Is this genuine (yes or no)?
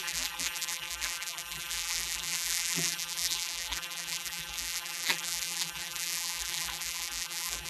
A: no